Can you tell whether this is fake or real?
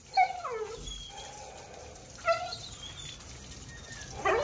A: real